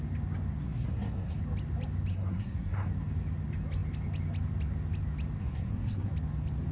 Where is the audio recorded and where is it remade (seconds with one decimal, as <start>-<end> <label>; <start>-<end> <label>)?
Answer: 0.0-0.6 recorded; 0.6-1.4 remade; 1.4-2.1 recorded; 2.1-2.9 remade; 2.9-5.4 recorded; 5.4-6.1 remade; 6.1-6.7 recorded